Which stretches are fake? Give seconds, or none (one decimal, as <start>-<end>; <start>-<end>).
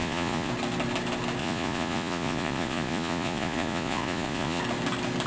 0.0-0.5; 1.4-4.6